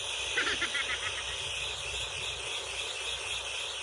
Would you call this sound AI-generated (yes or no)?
no